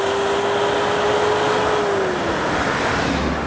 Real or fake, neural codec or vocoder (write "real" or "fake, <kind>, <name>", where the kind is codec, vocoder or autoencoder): real